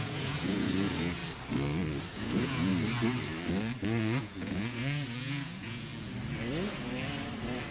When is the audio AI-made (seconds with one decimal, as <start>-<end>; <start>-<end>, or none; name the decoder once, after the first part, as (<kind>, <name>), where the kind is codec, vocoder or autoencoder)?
0.0-1.2 (vocoder, Vocos); 2.1-2.7; 4.2-5.9